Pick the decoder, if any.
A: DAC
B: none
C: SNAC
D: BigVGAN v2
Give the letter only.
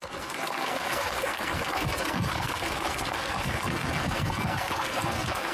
C